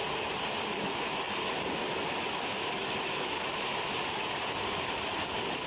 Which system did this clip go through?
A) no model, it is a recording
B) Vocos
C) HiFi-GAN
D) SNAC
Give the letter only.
A